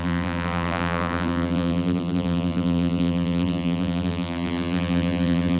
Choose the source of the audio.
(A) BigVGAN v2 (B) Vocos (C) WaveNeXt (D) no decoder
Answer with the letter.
A